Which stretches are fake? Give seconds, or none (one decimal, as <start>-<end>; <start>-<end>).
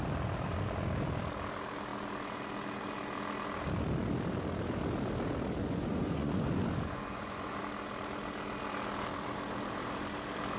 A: 5.6-7.6